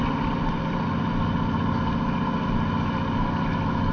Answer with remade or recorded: recorded